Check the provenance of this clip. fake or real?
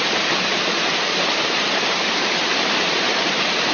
fake